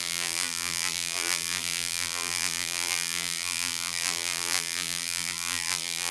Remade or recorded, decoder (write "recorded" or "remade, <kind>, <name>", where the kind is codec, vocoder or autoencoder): remade, vocoder, BigVGAN v2